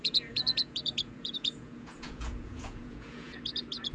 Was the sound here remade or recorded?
remade